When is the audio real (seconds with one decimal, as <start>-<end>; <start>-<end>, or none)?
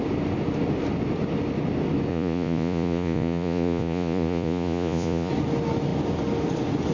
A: 0.0-2.1; 5.3-6.9